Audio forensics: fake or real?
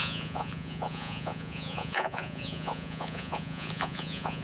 fake